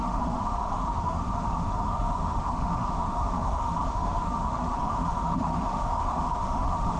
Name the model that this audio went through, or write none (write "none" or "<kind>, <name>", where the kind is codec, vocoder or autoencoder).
autoencoder, DAC-VAE